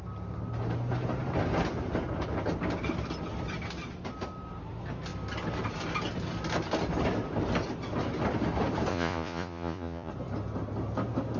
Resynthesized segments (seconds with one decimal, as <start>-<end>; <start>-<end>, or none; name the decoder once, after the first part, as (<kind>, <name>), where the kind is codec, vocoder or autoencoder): 8.9-10.1 (vocoder, Vocos)